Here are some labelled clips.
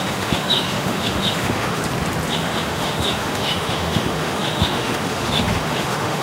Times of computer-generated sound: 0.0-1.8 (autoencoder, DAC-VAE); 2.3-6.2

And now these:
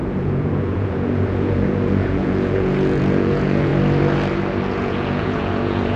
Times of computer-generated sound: 0.0-3.7 (vocoder, Vocos); 4.7-6.0

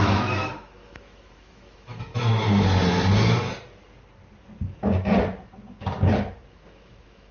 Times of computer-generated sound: 0.0-2.1 (autoencoder, DAC-VAE); 6.5-7.3

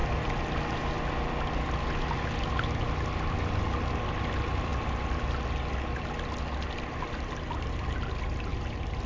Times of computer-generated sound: none